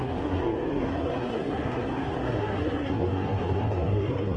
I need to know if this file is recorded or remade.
remade